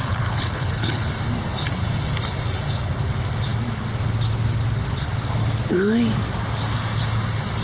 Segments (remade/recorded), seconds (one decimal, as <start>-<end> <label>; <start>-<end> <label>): 0.0-1.1 remade; 1.1-7.6 recorded